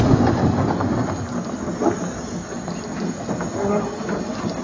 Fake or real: real